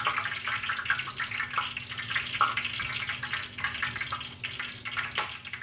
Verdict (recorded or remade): recorded